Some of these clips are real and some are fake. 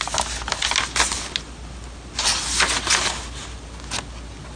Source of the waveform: real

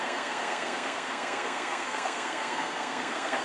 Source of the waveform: fake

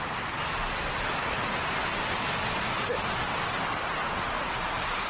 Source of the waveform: real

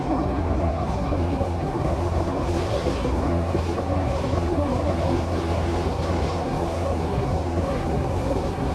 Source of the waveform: fake